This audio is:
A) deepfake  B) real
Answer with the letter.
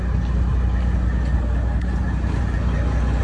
B